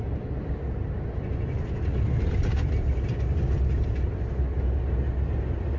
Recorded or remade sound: recorded